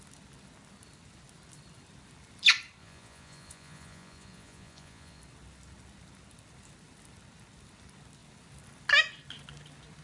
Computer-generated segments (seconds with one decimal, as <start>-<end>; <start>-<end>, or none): 2.8-5.2